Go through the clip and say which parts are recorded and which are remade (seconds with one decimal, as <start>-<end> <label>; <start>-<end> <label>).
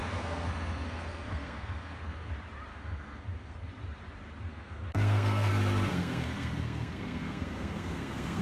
0.0-2.3 remade; 2.3-2.7 recorded; 2.7-3.7 remade; 3.7-4.5 recorded; 4.5-5.5 remade; 5.5-5.9 recorded; 5.9-8.4 remade